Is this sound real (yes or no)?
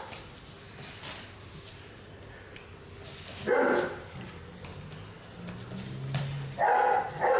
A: yes